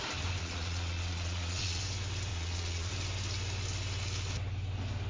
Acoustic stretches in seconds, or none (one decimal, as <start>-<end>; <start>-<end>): 0.0-0.4; 1.8-2.3; 2.9-5.1